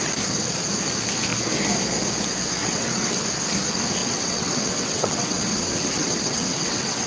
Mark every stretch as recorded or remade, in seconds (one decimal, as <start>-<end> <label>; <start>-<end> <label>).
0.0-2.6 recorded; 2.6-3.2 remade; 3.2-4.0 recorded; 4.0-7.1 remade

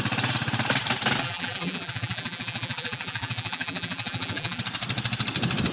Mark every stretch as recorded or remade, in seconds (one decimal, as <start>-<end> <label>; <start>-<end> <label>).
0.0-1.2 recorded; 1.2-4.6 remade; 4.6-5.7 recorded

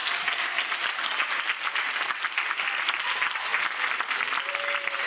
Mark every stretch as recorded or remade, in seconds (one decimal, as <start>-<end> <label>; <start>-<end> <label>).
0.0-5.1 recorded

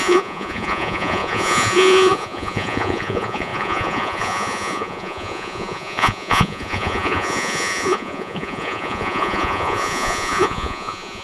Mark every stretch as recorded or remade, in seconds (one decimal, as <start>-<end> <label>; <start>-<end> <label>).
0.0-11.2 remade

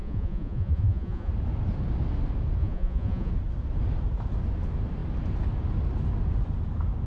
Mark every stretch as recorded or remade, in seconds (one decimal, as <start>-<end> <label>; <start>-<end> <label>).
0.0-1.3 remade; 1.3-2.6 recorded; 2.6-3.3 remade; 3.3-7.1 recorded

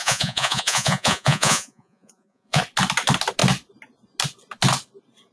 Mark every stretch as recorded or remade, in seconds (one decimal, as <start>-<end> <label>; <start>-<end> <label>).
0.0-2.6 remade; 2.6-5.3 recorded